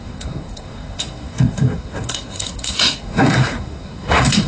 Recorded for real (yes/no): no